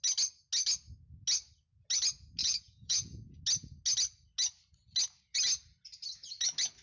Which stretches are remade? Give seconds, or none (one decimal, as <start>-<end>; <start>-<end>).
2.4-3.4